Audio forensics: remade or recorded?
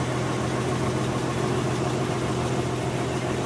recorded